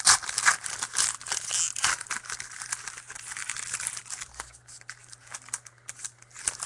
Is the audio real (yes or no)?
yes